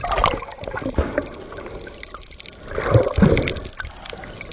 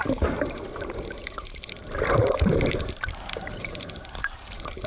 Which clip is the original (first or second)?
first